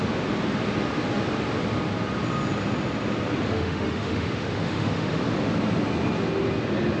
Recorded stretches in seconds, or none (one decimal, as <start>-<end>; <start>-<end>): 0.0-3.5; 5.2-7.0